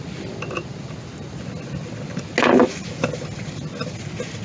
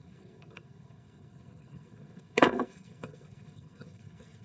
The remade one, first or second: second